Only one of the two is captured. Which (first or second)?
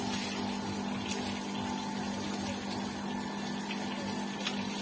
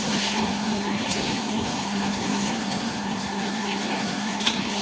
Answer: first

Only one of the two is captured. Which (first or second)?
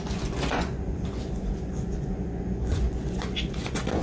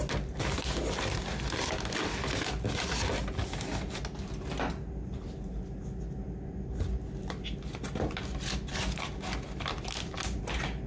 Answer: second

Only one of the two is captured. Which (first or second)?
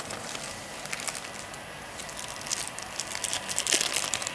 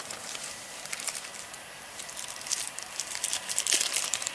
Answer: first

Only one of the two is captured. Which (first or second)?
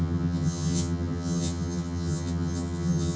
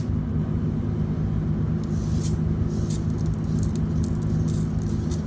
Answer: second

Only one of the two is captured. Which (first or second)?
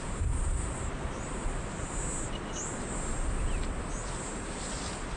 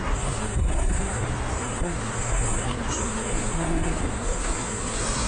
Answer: first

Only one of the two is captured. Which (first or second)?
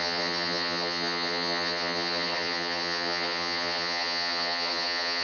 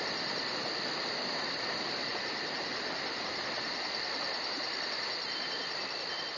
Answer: second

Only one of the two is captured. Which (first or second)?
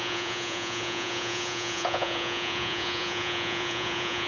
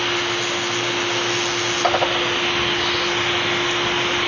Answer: second